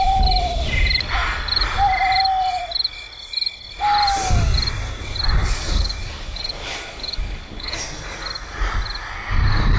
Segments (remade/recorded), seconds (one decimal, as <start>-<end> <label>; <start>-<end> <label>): 0.0-5.4 recorded; 5.4-7.8 remade; 7.8-9.8 recorded